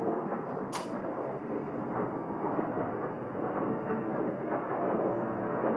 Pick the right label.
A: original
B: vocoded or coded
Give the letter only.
B